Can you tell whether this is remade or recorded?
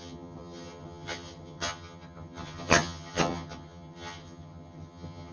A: remade